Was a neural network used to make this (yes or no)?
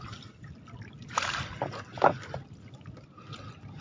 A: no